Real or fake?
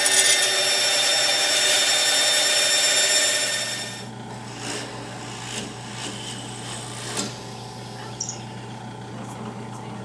real